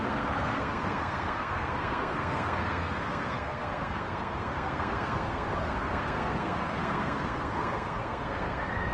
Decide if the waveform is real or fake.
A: fake